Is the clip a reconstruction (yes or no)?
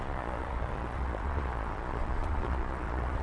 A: yes